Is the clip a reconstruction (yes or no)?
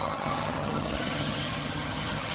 yes